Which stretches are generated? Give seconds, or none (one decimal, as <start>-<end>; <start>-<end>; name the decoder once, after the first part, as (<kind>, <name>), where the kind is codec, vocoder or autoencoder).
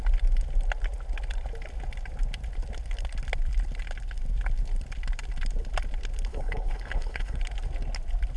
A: 6.3-7.4 (codec, HILCodec)